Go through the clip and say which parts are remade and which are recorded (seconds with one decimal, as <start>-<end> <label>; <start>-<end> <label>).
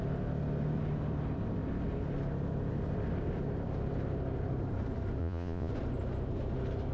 0.0-5.2 recorded; 5.2-5.7 remade; 5.7-6.9 recorded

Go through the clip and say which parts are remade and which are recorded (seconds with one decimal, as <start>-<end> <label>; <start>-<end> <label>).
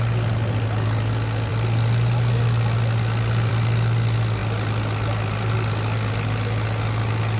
0.0-7.4 recorded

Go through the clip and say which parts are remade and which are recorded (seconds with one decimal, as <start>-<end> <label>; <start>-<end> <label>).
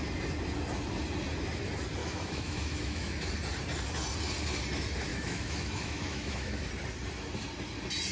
0.0-2.0 recorded; 2.0-3.3 remade; 3.3-5.1 recorded; 5.1-6.7 remade; 6.7-8.1 recorded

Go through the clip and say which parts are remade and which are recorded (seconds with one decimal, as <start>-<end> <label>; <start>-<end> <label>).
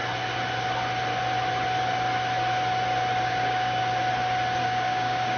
0.0-3.2 recorded; 3.2-3.8 remade; 3.8-4.6 recorded; 4.6-5.4 remade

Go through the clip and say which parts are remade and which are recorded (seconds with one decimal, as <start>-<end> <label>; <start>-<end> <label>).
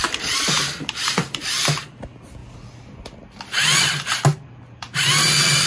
0.0-5.7 recorded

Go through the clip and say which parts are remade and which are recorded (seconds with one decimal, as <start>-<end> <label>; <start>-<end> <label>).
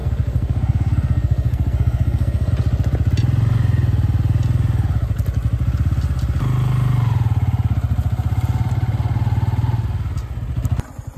0.0-2.5 remade; 2.5-11.2 recorded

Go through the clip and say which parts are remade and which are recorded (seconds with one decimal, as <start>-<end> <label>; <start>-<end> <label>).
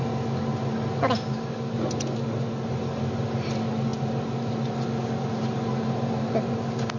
0.0-3.9 recorded; 3.9-4.6 remade; 4.6-7.0 recorded